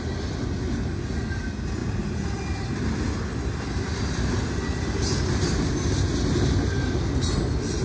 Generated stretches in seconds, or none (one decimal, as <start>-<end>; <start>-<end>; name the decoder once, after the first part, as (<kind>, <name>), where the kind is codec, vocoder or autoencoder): none